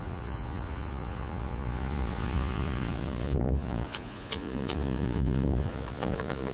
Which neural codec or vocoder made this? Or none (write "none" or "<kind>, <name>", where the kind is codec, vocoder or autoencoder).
vocoder, Vocos